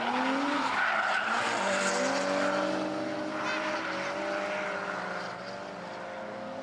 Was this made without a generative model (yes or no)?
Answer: yes